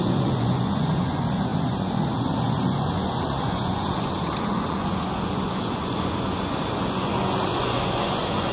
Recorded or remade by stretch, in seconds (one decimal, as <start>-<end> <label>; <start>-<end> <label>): 0.0-8.5 remade

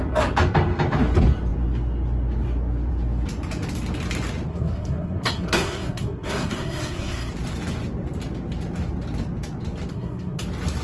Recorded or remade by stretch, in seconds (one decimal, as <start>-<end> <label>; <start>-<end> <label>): 0.0-4.5 recorded; 4.5-7.3 remade; 7.3-9.9 recorded; 9.9-10.4 remade; 10.4-10.8 recorded

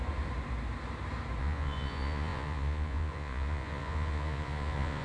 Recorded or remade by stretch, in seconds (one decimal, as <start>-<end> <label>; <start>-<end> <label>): 0.0-1.4 recorded; 1.4-5.0 remade

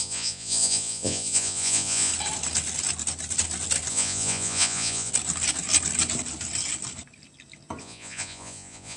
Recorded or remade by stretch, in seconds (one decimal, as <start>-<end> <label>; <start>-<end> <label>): 0.0-2.1 remade; 2.1-3.9 recorded; 3.9-5.1 remade; 5.1-7.8 recorded; 7.8-9.0 remade

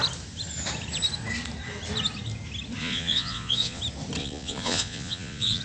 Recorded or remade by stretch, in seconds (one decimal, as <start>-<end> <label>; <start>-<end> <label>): 0.0-2.8 recorded; 2.8-3.8 remade; 3.8-4.2 recorded; 4.2-5.6 remade

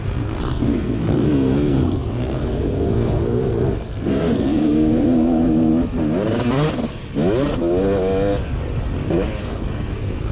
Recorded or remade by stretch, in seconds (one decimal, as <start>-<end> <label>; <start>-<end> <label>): 0.0-5.7 remade; 5.7-9.4 recorded; 9.4-10.3 remade

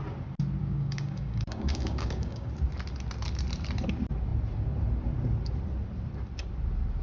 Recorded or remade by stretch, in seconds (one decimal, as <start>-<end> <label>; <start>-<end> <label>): 0.0-0.6 recorded; 0.6-2.5 remade; 2.5-7.0 recorded